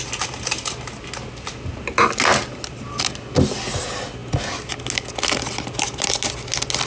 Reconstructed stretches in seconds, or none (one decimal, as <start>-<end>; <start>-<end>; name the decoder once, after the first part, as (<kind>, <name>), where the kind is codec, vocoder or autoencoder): none

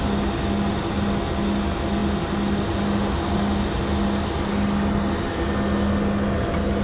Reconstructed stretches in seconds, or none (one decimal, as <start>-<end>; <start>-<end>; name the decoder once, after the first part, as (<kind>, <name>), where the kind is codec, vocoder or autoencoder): none

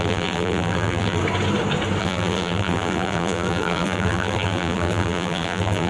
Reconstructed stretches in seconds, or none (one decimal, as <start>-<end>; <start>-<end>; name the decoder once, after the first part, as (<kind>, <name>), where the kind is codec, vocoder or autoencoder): 0.0-1.2 (vocoder, BigVGAN v2); 2.0-5.9

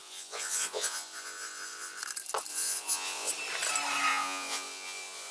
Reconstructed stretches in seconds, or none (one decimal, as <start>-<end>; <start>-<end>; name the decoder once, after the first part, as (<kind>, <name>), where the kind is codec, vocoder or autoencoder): 0.0-2.0 (vocoder, Vocos); 2.5-3.3; 4.1-5.3

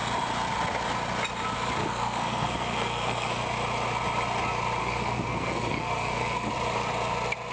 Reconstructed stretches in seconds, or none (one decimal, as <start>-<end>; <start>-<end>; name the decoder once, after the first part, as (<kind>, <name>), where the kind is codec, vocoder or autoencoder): 1.8-3.4 (codec, SNAC); 4.8-6.5

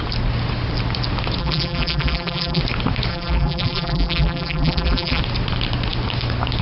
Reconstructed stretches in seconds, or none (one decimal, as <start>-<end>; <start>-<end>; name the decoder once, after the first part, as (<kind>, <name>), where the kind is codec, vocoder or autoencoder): 1.4-2.6 (vocoder, BigVGAN v2); 3.1-5.2

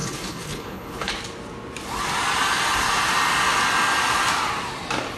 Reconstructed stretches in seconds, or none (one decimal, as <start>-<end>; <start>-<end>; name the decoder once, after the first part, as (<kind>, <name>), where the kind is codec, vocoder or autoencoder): 0.0-1.1 (codec, HILCodec)

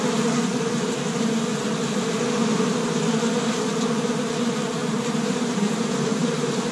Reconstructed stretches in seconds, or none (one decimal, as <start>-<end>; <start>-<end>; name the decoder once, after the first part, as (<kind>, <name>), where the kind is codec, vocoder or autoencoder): 4.8-6.7 (vocoder, BigVGAN v2)